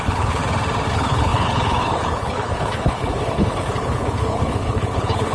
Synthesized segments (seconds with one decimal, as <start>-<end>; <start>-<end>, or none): 0.0-0.4; 0.9-5.3